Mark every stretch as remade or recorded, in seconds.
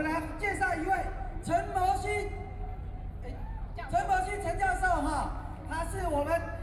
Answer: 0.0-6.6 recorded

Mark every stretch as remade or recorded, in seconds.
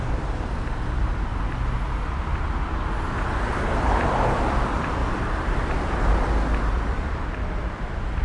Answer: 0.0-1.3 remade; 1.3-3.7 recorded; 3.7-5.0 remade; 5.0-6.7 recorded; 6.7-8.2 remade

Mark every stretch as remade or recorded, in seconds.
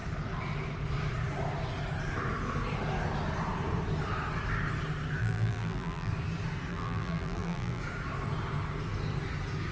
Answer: 0.0-5.2 recorded; 5.2-6.1 remade; 6.1-6.7 recorded; 6.7-7.8 remade; 7.8-9.7 recorded